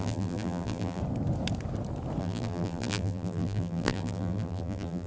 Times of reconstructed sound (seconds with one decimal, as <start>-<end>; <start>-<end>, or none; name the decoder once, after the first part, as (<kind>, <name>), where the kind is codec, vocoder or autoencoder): 0.0-1.0 (vocoder, BigVGAN v2); 2.2-5.1

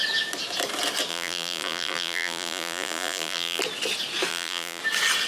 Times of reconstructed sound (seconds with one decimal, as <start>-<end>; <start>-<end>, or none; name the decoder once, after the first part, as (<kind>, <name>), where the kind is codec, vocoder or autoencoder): 1.1-3.6 (vocoder, BigVGAN v2); 4.3-4.8

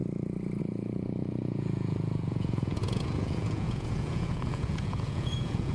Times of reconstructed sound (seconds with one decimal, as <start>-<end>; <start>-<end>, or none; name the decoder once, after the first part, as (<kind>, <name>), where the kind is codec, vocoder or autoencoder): 0.6-5.7 (vocoder, Vocos)

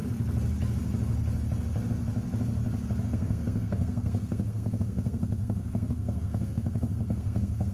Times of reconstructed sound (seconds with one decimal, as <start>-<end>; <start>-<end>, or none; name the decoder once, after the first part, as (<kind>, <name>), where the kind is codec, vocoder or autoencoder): 3.0-7.7 (codec, SNAC)

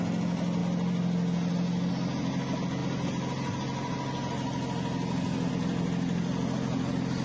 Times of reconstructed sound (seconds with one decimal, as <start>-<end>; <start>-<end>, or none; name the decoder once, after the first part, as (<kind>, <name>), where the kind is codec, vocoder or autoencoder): none

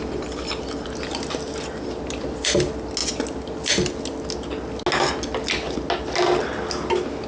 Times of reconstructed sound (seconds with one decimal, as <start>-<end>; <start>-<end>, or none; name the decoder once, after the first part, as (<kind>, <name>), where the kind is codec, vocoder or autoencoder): none